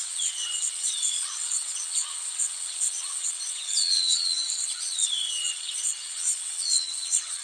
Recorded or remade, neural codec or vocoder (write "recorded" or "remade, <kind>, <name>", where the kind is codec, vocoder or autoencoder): remade, vocoder, WaveNeXt